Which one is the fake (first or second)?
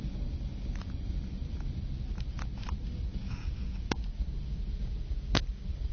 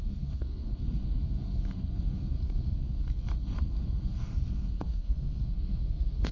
second